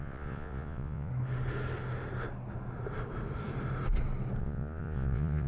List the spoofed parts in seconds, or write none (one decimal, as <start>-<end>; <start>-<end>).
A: 0.0-1.1; 4.4-5.5